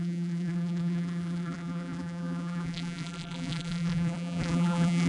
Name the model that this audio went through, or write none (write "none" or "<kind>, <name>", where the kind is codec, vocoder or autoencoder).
vocoder, BigVGAN v2